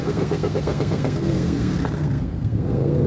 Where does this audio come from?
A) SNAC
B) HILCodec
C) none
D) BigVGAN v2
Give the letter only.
A